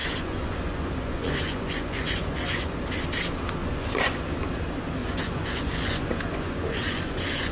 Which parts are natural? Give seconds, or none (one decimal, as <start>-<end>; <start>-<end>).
2.8-3.6; 4.2-5.0